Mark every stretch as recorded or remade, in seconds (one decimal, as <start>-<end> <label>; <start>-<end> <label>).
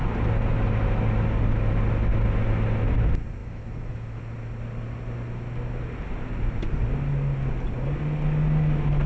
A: 0.0-3.4 recorded; 3.4-4.2 remade; 4.2-9.1 recorded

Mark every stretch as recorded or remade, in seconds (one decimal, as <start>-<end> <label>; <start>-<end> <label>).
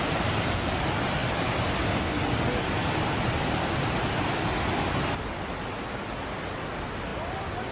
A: 0.0-7.7 recorded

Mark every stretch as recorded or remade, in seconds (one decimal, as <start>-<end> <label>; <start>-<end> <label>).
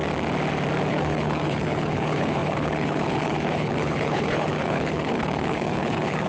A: 0.0-0.9 recorded; 0.9-6.3 remade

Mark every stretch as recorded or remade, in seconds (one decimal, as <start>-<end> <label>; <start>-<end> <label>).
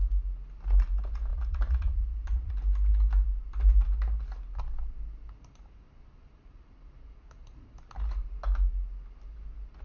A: 0.0-1.3 recorded; 1.3-2.5 remade; 2.5-9.8 recorded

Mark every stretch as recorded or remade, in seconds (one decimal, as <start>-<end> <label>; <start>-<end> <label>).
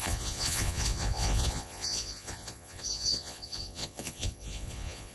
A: 0.0-5.1 remade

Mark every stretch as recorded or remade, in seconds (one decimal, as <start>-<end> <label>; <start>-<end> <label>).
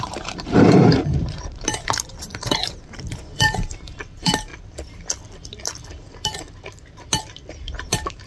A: 0.0-4.5 remade; 4.5-7.5 recorded; 7.5-8.3 remade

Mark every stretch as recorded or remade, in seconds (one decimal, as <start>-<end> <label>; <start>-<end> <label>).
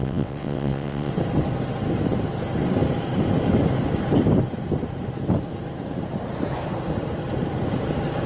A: 0.0-1.1 remade; 1.1-8.3 recorded